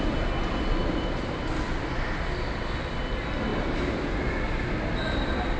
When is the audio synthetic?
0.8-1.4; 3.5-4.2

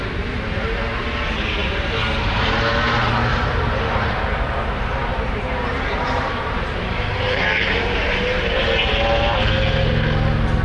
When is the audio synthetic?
1.6-2.5; 3.3-4.2; 5.1-8.9

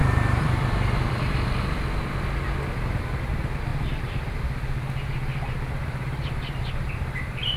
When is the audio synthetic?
0.0-0.6; 3.7-4.4; 5.3-7.6

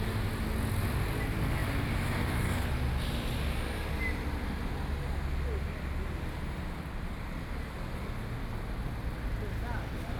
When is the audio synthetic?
none